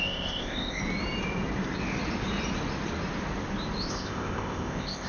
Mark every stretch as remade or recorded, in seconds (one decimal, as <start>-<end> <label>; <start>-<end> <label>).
0.0-0.8 remade; 0.8-3.9 recorded; 3.9-5.1 remade